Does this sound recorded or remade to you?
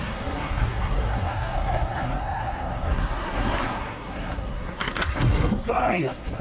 remade